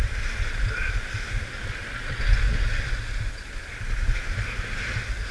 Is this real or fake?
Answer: real